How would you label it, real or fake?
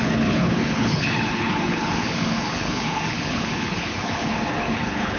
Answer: fake